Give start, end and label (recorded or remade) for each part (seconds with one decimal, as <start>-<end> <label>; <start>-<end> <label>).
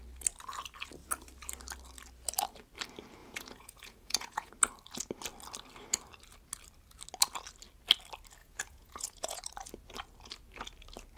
0.0-3.2 recorded; 3.2-4.5 remade; 4.5-8.4 recorded; 8.4-9.4 remade; 9.4-11.2 recorded